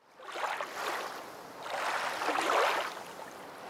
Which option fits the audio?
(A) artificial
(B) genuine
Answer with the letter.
B